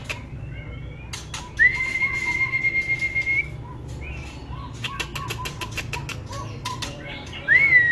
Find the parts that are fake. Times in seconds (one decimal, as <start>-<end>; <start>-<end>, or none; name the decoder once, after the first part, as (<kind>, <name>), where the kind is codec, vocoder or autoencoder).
1.9-2.6 (vocoder, BigVGAN v2); 6.1-7.3